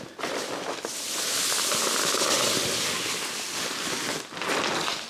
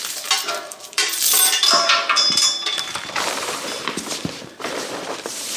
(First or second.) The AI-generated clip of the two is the second